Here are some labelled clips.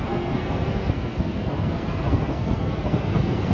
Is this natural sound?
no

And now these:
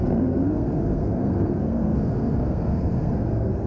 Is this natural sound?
no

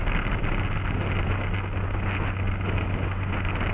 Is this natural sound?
yes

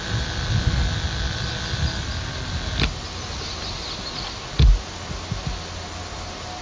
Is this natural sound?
yes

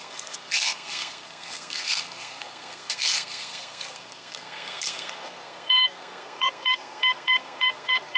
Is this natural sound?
no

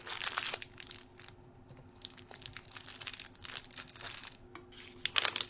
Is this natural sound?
yes